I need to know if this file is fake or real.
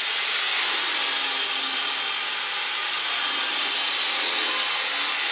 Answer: real